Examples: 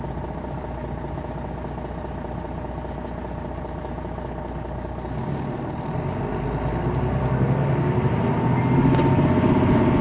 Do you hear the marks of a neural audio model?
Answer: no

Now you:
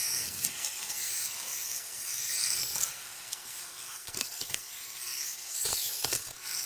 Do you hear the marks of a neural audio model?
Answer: yes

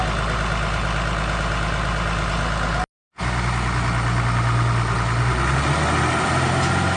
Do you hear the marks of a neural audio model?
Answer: no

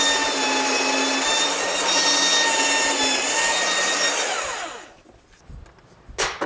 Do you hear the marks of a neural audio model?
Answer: no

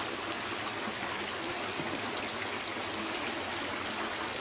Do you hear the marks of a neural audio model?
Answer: no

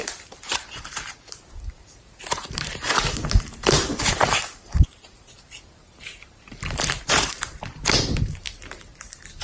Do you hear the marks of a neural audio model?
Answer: yes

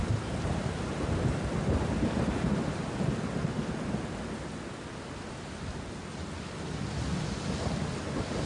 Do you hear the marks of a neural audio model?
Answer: no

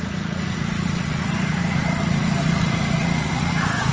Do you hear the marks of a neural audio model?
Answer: yes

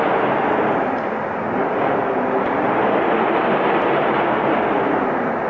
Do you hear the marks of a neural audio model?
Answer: no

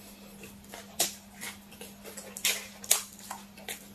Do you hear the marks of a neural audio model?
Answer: no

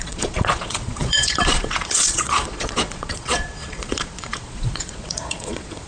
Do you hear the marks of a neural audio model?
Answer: yes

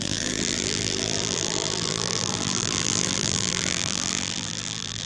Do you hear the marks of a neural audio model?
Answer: yes